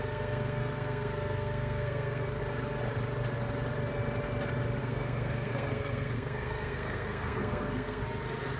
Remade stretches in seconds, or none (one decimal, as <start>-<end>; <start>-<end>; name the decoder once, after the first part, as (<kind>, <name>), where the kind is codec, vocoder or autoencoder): 0.0-2.4 (codec, SNAC); 4.8-8.0